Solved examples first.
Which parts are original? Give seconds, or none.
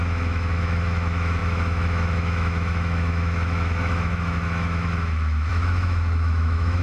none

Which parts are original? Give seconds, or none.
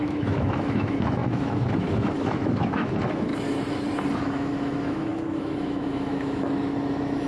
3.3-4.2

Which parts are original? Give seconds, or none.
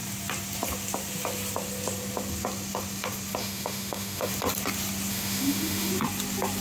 0.0-3.4; 4.3-5.1; 5.9-6.6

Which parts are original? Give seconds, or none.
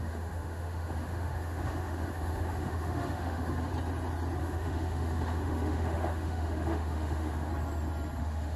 3.7-4.4; 7.5-8.2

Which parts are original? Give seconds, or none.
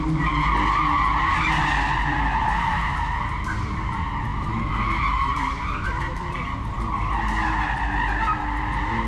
0.0-4.3; 5.3-9.1